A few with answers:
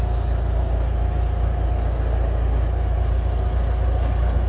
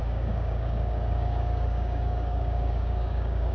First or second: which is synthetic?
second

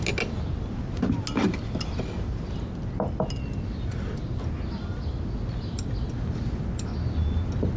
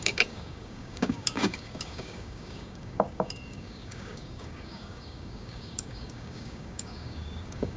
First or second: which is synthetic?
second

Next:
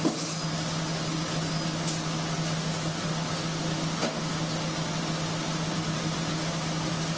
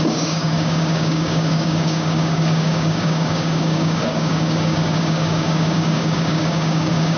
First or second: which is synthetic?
second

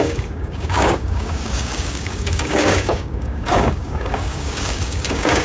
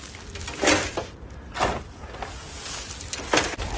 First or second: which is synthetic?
first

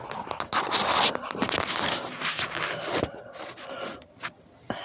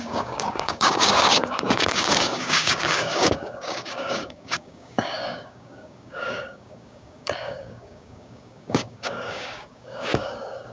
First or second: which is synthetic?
second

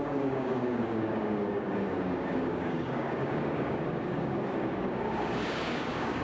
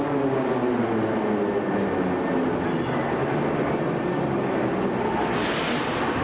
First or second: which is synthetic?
first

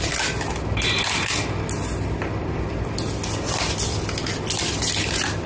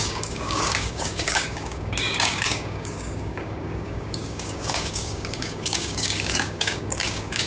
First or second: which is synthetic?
second